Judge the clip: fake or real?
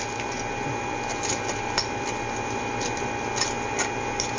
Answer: real